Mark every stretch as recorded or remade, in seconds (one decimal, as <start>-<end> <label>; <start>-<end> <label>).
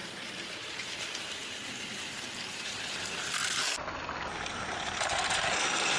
0.0-3.4 remade; 3.4-4.5 recorded; 4.5-6.0 remade